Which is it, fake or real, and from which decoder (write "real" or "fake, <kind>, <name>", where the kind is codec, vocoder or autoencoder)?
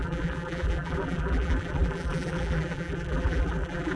fake, vocoder, BigVGAN v2